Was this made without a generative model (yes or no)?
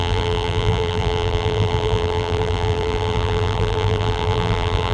no